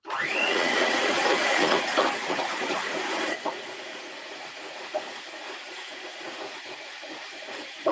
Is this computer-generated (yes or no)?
yes